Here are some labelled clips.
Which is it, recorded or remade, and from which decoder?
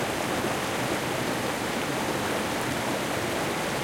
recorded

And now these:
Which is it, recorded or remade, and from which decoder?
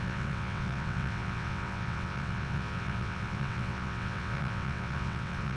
remade, vocoder, WaveNeXt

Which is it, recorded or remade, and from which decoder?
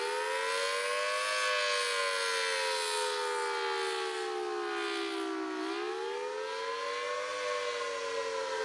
recorded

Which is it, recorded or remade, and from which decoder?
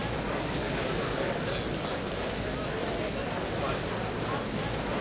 recorded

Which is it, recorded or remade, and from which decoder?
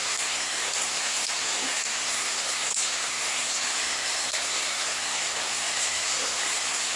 remade, codec, SNAC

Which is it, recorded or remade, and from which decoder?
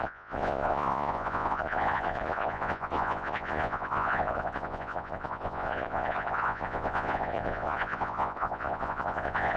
remade, vocoder, Vocos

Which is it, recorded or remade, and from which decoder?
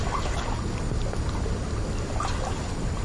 recorded